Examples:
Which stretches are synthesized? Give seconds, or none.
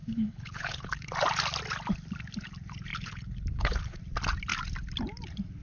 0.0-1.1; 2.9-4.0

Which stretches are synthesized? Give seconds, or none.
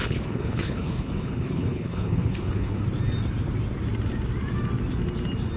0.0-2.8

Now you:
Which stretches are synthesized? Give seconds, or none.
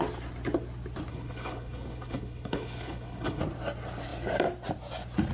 1.1-3.4